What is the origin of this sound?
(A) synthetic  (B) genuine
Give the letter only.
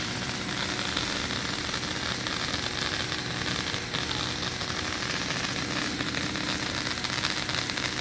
B